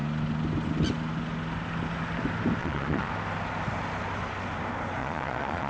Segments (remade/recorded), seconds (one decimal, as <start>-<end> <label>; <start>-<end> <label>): 0.0-2.6 recorded; 2.6-3.1 remade; 3.1-5.0 recorded; 5.0-5.7 remade